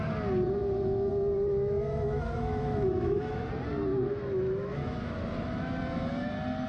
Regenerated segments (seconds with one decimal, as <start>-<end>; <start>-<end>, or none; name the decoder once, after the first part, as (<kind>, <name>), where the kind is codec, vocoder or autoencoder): 0.6-1.1 (autoencoder, DAC-VAE); 1.5-3.5; 3.9-5.8